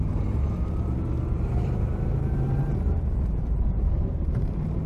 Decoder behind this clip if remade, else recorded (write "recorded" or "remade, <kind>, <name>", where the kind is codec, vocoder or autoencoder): remade, vocoder, BigVGAN v2